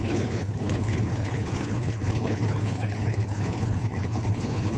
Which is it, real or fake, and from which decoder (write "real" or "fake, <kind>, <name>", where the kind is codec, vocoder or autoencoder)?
fake, codec, HILCodec